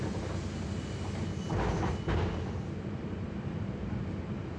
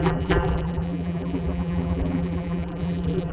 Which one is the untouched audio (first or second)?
first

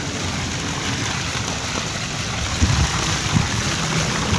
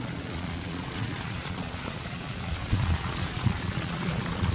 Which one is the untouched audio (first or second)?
first